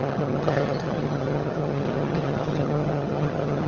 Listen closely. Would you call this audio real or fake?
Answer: fake